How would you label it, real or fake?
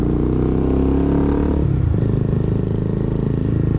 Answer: real